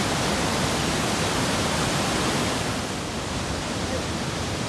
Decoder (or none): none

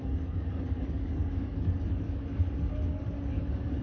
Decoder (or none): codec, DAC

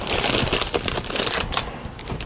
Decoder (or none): none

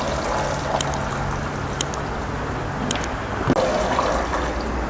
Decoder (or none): none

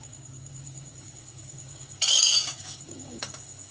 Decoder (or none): codec, DAC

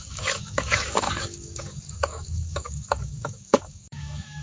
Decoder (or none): codec, DAC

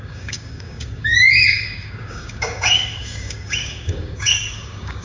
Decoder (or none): codec, DAC